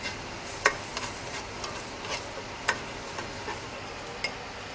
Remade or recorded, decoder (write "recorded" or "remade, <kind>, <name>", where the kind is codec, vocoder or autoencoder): recorded